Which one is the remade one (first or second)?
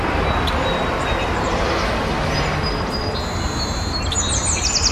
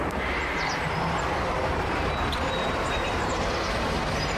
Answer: second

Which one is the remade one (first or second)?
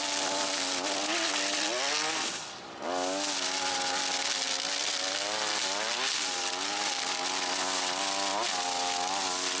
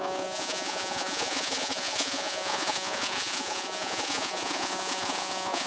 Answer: second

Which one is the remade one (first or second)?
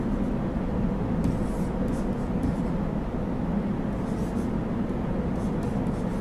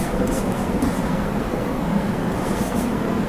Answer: second